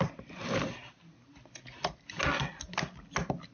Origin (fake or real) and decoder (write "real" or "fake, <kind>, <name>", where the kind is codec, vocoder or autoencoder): real